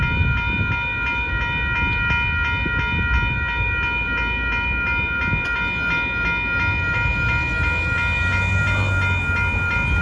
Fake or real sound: real